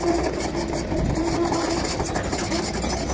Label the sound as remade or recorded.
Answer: recorded